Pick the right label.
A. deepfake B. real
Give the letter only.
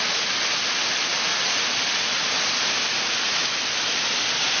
B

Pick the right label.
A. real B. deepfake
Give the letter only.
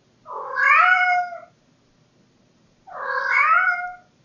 A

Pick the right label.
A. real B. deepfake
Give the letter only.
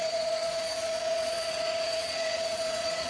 B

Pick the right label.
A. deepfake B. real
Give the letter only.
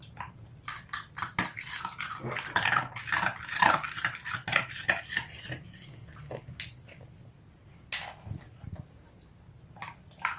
B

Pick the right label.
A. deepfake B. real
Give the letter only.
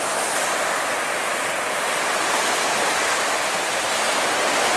B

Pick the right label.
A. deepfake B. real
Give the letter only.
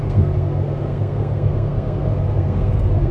A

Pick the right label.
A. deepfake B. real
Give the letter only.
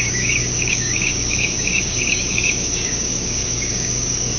A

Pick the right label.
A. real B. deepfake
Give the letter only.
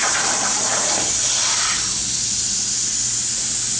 A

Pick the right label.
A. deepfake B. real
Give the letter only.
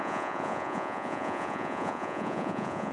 A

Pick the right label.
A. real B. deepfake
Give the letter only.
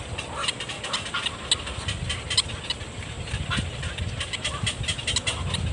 A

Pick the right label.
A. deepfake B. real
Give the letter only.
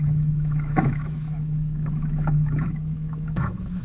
A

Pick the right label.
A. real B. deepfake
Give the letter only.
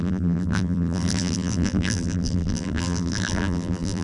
B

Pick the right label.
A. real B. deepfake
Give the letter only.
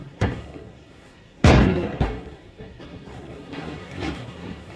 B